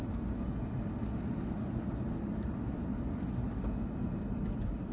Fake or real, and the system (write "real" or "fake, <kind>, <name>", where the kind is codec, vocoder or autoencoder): real